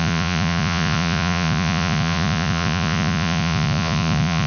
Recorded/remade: remade